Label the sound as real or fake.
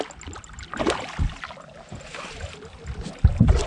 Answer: real